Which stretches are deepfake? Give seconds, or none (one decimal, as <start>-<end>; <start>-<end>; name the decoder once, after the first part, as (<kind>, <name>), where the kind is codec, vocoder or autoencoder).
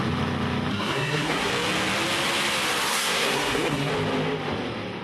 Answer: 0.7-1.5 (codec, SNAC); 2.9-3.9